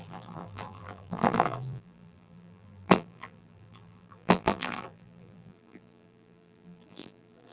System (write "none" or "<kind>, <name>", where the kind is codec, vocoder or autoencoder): vocoder, BigVGAN v2